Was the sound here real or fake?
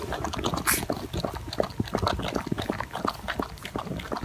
real